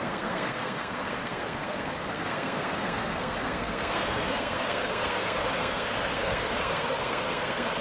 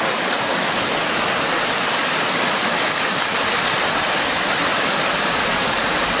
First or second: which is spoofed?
first